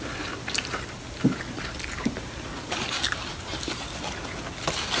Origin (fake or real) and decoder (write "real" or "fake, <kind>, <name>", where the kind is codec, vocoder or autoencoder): real